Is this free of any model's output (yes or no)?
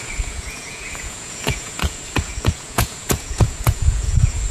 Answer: no